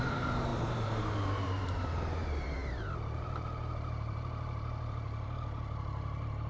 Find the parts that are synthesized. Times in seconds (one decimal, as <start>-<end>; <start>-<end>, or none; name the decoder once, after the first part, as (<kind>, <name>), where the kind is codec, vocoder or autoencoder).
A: 0.0-6.5 (vocoder, BigVGAN v2)